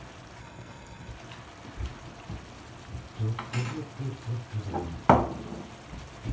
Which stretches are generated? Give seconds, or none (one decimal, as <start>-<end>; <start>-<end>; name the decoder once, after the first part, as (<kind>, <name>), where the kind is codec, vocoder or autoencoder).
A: 0.4-1.1 (codec, SNAC)